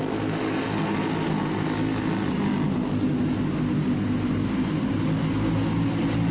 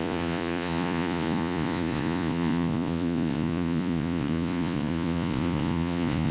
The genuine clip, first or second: first